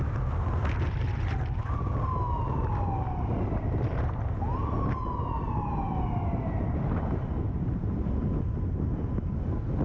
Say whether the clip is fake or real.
real